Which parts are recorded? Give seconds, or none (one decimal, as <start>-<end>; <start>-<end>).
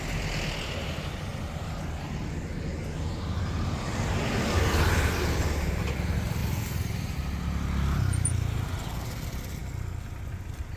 0.0-10.8